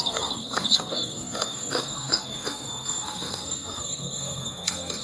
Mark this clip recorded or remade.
remade